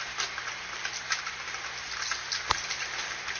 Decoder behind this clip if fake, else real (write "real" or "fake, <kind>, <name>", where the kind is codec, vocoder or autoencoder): real